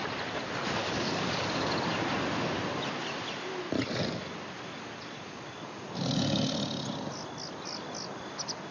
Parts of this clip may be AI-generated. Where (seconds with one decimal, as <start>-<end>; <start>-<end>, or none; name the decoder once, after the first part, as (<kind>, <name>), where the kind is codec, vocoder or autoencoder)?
0.8-1.7 (codec, DAC)